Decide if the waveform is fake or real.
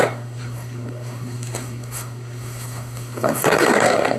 fake